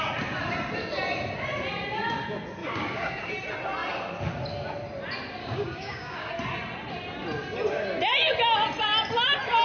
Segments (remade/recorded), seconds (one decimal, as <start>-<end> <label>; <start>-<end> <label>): 0.0-2.6 recorded; 2.6-3.3 remade; 3.3-5.4 recorded; 5.4-6.3 remade; 6.3-9.6 recorded